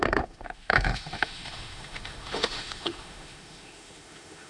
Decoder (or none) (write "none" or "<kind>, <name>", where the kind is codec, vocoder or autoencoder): autoencoder, DAC-VAE